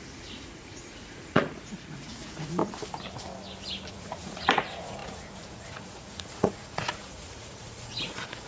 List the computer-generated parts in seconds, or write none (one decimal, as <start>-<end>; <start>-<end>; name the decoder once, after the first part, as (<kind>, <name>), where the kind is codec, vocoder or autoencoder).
0.0-2.6 (vocoder, Vocos); 3.9-8.5